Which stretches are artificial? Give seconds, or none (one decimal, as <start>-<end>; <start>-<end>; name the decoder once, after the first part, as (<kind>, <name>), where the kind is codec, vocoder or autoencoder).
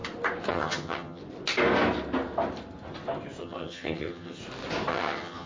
0.5-1.2 (vocoder, HiFi-GAN); 3.4-4.4; 4.9-5.5